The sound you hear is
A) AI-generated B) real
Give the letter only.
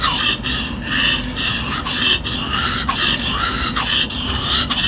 B